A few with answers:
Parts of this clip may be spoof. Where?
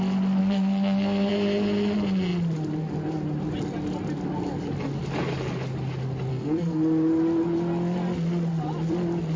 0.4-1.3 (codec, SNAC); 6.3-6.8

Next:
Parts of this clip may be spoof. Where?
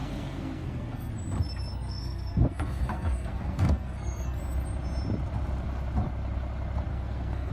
0.0-1.1 (codec, SNAC); 1.7-4.4; 6.9-7.5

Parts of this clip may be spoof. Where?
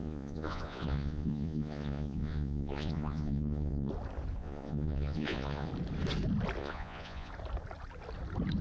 0.0-3.9 (vocoder, Vocos); 4.4-5.7; 6.6-7.3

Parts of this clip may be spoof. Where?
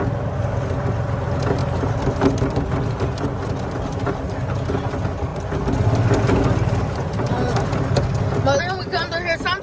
none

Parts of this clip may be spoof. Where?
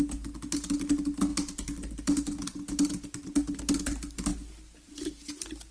none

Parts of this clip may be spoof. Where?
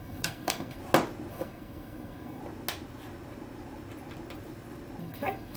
0.0-0.8 (codec, SNAC); 1.3-2.4; 5.0-5.6